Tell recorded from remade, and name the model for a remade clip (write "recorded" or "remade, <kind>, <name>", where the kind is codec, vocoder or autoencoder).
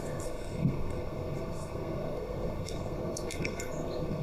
remade, codec, SNAC